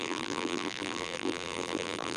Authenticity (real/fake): fake